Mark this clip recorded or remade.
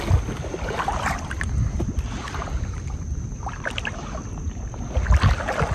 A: recorded